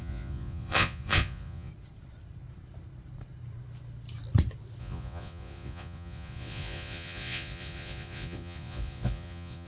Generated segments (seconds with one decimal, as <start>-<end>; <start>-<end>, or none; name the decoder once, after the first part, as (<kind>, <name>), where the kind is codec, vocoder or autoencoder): 0.0-1.7 (vocoder, Vocos); 4.8-9.7